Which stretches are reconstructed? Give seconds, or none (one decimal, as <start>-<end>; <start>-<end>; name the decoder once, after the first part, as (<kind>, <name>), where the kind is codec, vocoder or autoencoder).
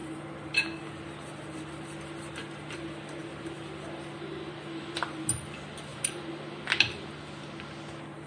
none